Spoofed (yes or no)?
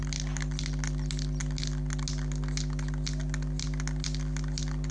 no